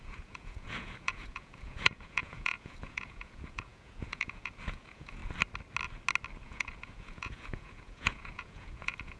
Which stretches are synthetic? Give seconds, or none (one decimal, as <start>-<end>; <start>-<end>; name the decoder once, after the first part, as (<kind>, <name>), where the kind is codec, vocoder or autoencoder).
0.0-5.2 (vocoder, Vocos); 6.4-9.2